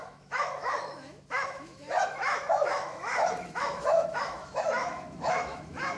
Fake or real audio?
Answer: fake